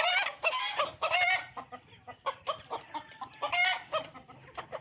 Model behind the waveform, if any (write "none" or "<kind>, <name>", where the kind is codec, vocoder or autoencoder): none